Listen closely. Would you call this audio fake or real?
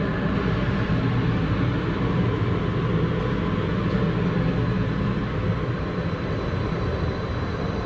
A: real